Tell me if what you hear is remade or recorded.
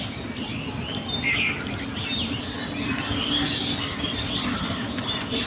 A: recorded